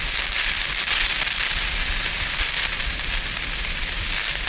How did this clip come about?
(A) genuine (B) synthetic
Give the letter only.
A